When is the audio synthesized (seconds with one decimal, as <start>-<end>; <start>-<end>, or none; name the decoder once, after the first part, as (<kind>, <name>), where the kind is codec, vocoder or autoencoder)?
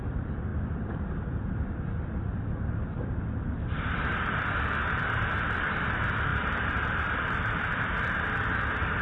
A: 0.0-9.0 (vocoder, BigVGAN v2)